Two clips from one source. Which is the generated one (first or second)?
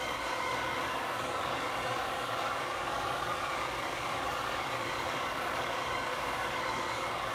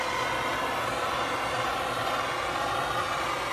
first